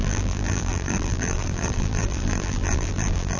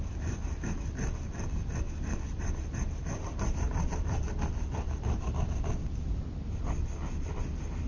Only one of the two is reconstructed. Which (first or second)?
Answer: first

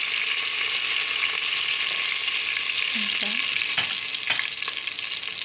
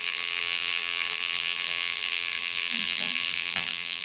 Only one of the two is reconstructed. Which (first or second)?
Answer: second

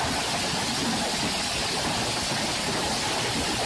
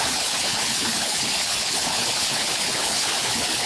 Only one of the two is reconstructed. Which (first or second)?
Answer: second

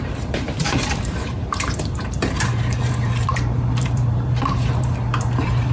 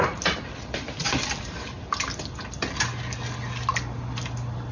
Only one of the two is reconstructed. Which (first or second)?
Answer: first